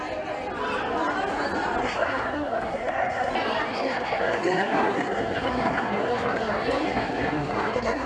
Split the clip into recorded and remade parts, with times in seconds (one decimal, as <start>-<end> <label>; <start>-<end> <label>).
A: 0.0-1.8 recorded; 1.8-3.3 remade; 3.3-3.7 recorded; 3.7-8.1 remade